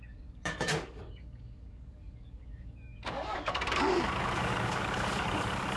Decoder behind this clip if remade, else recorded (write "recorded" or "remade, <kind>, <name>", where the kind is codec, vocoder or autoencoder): remade, codec, DAC